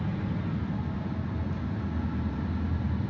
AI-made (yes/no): no